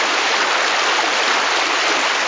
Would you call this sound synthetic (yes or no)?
no